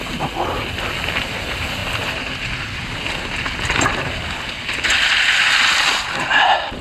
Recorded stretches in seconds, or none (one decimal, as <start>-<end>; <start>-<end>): 0.0-6.8